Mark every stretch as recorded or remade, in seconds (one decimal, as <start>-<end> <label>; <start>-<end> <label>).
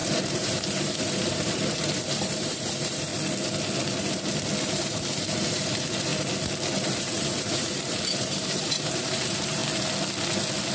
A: 0.0-3.1 remade; 3.1-4.6 recorded; 4.6-6.1 remade; 6.1-7.0 recorded; 7.0-9.6 remade; 9.6-10.7 recorded